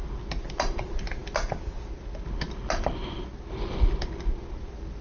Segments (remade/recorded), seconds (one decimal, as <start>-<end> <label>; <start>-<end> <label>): 0.0-5.0 recorded